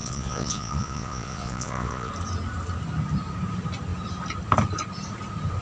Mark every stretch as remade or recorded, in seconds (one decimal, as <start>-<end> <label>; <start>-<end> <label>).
0.0-2.1 remade; 2.1-5.6 recorded